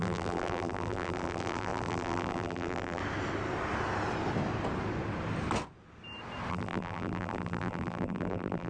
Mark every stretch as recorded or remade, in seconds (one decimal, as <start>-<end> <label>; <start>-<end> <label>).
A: 0.0-3.0 remade; 3.0-6.5 recorded; 6.5-8.7 remade